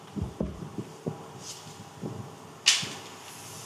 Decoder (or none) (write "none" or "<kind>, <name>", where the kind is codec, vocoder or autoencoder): none